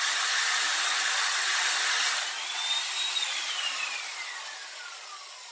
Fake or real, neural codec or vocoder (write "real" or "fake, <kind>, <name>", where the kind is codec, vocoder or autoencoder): real